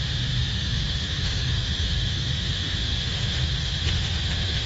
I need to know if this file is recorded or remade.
remade